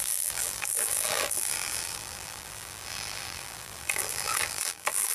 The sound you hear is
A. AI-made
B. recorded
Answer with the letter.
A